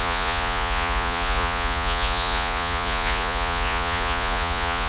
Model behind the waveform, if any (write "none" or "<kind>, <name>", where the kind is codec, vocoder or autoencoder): vocoder, Vocos